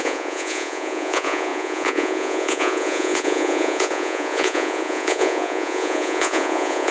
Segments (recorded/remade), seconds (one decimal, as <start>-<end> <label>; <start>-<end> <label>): 0.0-6.9 remade